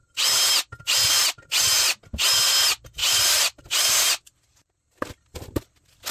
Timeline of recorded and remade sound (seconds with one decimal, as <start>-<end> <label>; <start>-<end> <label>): 0.0-3.0 recorded; 3.0-3.6 remade; 3.6-6.1 recorded